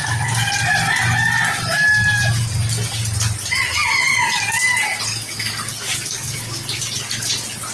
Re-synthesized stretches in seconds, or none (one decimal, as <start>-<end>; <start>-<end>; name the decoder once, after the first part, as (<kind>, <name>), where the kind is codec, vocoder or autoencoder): 5.1-6.8 (codec, DAC)

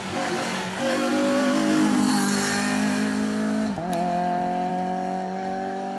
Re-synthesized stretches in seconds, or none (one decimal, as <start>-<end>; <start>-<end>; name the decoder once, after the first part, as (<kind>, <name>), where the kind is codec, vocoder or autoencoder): 0.0-1.1 (codec, DAC); 4.7-6.0

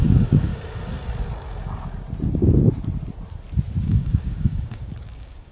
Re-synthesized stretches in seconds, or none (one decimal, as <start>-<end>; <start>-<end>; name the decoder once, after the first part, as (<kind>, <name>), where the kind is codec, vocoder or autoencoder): 0.0-0.5 (codec, DAC); 3.8-5.5

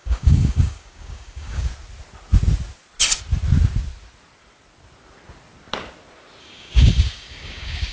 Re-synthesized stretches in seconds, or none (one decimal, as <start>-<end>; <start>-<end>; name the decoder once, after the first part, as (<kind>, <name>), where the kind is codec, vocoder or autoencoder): 0.0-1.7 (codec, DAC); 6.4-7.9

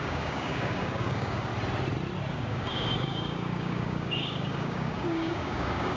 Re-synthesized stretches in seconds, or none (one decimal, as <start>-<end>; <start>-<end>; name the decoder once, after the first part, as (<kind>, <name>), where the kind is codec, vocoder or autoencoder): 0.0-1.5 (codec, DAC); 2.3-6.0

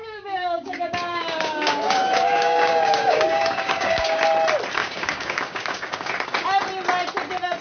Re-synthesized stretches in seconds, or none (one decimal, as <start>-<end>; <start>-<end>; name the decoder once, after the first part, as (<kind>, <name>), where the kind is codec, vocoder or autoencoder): 0.0-4.2 (codec, DAC); 4.8-6.1